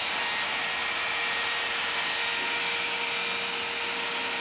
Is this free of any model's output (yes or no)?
yes